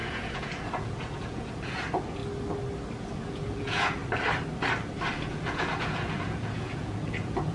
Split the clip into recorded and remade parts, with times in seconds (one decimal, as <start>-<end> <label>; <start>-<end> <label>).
0.0-2.2 remade; 2.2-3.0 recorded; 3.0-4.0 remade; 4.0-5.2 recorded; 5.2-7.5 remade